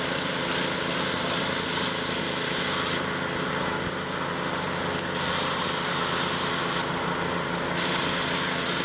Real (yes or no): yes